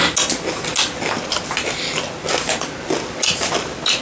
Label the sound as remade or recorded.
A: recorded